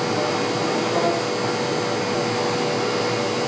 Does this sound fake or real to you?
real